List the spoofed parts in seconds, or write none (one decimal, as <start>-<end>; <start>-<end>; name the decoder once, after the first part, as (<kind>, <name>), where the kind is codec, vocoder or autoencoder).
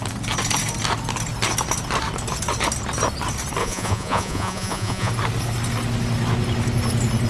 3.6-5.1 (vocoder, Vocos)